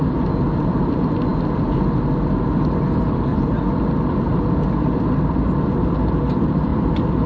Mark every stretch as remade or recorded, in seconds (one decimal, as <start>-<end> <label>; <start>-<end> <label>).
0.0-3.3 recorded; 3.3-5.4 remade; 5.4-6.7 recorded; 6.7-7.3 remade